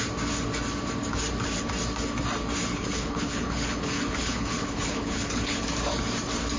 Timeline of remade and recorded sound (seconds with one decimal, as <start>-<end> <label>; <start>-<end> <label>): 0.0-2.7 recorded; 2.7-5.7 remade; 5.7-6.6 recorded